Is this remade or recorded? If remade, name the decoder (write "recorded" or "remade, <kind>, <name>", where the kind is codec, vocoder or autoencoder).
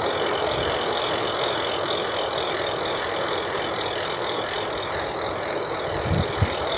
remade, vocoder, BigVGAN v2